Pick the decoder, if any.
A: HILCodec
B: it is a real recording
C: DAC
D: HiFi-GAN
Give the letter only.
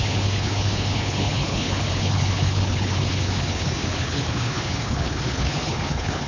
A